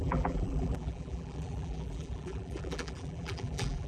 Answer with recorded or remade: remade